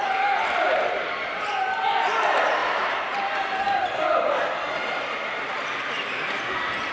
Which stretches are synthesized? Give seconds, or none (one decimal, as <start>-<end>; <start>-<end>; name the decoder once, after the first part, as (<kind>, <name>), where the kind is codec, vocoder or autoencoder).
2.6-3.6 (vocoder, BigVGAN v2); 4.8-5.5